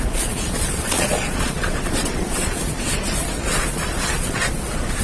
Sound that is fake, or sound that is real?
fake